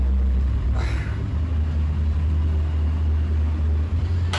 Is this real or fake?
real